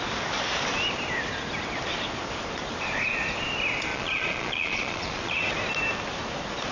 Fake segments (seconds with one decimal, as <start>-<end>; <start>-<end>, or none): 3.9-5.4